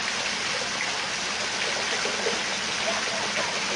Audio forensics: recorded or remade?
recorded